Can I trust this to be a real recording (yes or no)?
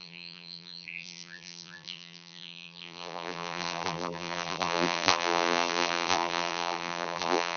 no